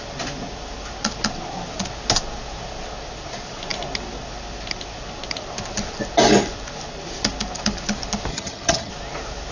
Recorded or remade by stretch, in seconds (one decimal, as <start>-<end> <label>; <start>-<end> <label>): 0.0-8.3 recorded; 8.3-8.9 remade; 8.9-9.5 recorded

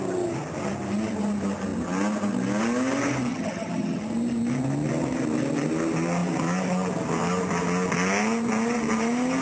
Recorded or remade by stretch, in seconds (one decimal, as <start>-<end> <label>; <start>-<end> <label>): 0.0-3.3 recorded; 3.3-4.0 remade; 4.0-9.4 recorded